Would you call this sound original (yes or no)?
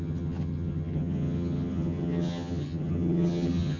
no